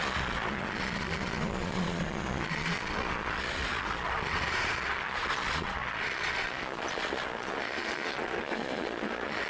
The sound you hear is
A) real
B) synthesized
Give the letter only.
B